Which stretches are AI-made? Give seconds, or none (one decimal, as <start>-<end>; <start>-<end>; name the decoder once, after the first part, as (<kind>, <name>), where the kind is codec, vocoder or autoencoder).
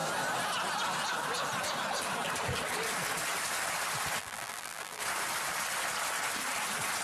4.2-5.0 (vocoder, BigVGAN v2)